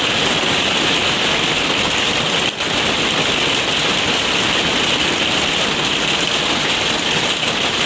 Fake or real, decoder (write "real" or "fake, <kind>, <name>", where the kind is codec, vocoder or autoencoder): real